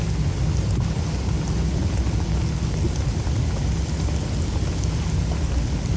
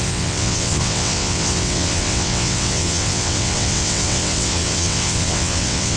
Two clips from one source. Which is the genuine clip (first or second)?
first